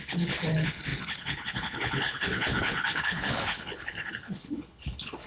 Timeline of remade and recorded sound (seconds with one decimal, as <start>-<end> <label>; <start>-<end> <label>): 0.0-5.3 remade